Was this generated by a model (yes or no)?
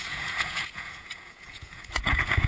yes